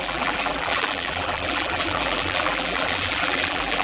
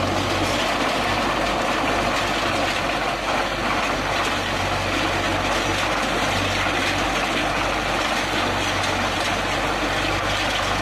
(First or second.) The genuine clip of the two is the second